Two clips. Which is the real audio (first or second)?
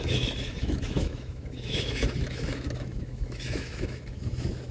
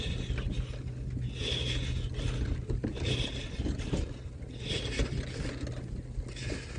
second